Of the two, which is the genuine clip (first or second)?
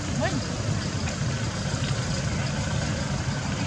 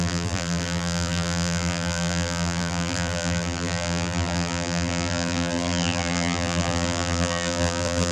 first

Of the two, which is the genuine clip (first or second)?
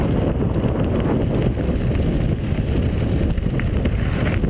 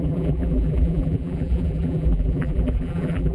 first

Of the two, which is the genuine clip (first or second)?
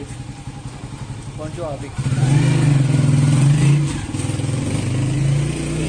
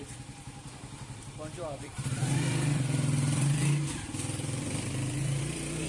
first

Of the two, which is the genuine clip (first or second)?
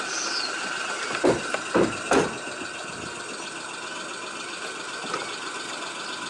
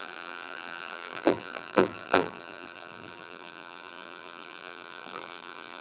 first